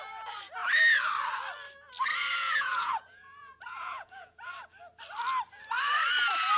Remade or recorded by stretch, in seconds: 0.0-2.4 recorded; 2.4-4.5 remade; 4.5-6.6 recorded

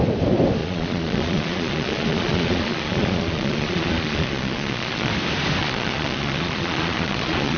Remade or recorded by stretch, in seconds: 0.0-0.6 recorded; 0.6-5.1 remade; 5.1-5.6 recorded; 5.6-7.6 remade

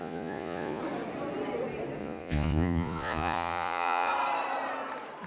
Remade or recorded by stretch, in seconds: 0.0-0.8 remade; 0.8-2.0 recorded; 2.0-4.1 remade; 4.1-5.3 recorded

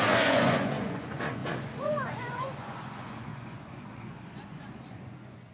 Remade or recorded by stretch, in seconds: 0.0-5.5 remade

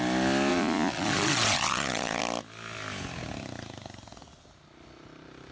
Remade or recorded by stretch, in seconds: 0.0-0.5 recorded; 0.5-2.2 remade; 2.2-5.5 recorded

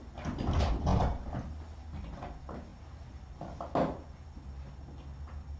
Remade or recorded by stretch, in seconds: 0.0-5.6 recorded

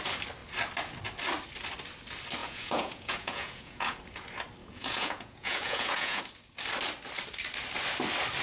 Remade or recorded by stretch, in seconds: 0.0-2.4 recorded; 2.4-4.0 remade; 4.0-4.6 recorded; 4.6-6.2 remade; 6.2-8.4 recorded

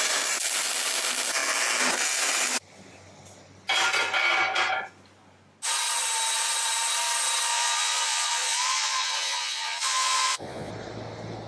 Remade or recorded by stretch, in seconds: 0.0-7.5 recorded; 7.5-10.7 remade; 10.7-11.5 recorded